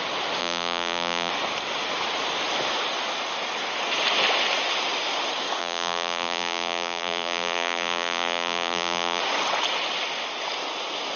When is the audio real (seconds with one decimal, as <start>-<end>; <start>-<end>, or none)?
0.0-0.4; 1.3-5.6; 9.2-11.2